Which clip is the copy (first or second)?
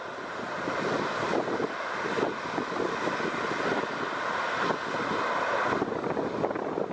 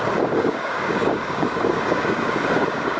second